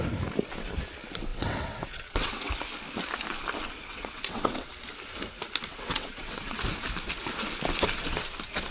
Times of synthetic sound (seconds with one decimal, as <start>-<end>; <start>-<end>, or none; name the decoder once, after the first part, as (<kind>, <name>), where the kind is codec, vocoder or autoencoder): 1.3-2.5 (vocoder, WaveNeXt); 3.9-4.7; 5.7-6.4